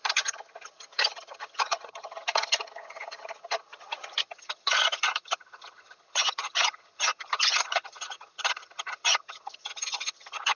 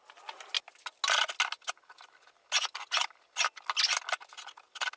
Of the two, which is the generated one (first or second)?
first